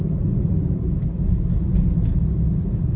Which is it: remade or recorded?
recorded